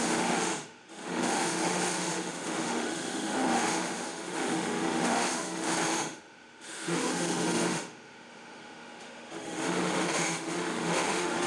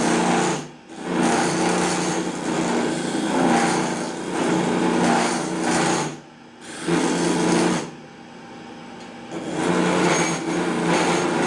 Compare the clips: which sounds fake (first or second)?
first